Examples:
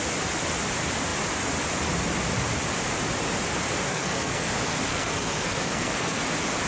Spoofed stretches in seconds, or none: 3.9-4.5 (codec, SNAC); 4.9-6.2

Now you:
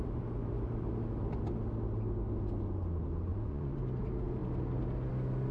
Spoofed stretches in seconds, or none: 3.3-3.8 (vocoder, Vocos)